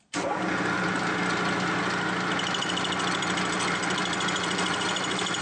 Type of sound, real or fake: real